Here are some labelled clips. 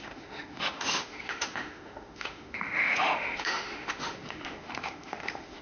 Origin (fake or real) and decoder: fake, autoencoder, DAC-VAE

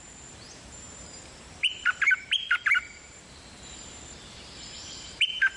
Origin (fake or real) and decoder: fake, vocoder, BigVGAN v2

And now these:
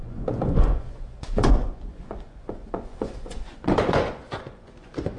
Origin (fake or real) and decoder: fake, vocoder, Vocos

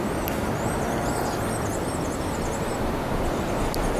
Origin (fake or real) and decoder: real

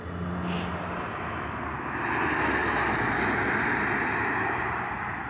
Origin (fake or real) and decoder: real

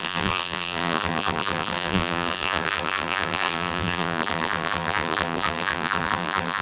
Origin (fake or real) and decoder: fake, vocoder, BigVGAN v2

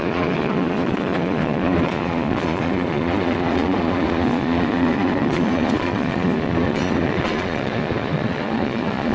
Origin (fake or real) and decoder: fake, vocoder, Vocos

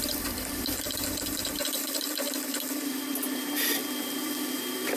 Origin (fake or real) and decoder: fake, vocoder, BigVGAN v2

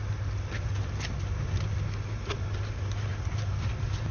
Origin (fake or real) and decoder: real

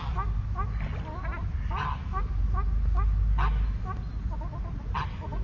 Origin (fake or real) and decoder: real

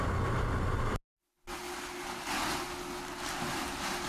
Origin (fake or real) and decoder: real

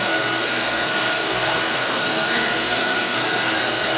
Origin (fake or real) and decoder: fake, codec, SNAC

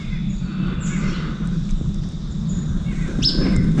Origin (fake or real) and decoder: real